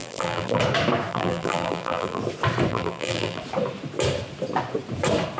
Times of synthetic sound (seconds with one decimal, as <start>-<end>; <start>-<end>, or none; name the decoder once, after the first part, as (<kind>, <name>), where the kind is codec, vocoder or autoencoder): 0.0-0.6 (vocoder, BigVGAN v2); 1.1-2.2; 2.7-3.4